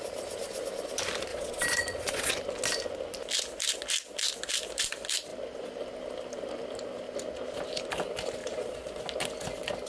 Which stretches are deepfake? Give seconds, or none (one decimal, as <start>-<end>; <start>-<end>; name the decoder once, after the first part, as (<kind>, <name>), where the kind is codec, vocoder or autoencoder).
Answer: 1.3-2.3 (vocoder, Vocos); 8.4-9.0

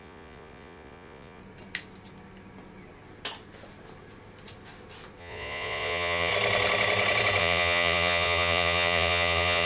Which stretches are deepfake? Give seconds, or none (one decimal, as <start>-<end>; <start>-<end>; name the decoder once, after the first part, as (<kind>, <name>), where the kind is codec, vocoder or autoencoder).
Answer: 0.0-1.4 (vocoder, Vocos); 5.2-6.3; 7.4-9.7